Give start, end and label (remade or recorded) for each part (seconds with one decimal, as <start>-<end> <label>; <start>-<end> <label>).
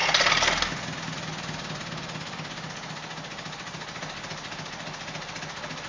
0.0-5.9 recorded